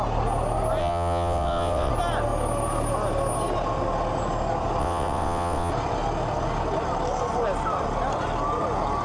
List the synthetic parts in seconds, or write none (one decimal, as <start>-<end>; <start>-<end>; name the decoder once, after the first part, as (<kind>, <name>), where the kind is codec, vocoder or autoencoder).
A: 0.8-1.9 (vocoder, WaveNeXt); 4.8-5.7